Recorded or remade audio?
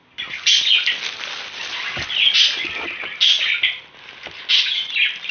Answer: recorded